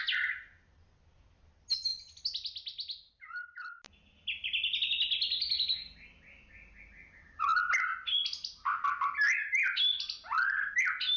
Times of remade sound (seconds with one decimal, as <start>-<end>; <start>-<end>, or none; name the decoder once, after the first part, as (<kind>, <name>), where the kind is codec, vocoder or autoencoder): none